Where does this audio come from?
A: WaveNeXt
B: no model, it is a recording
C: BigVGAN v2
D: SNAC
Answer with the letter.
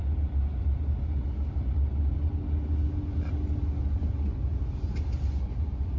B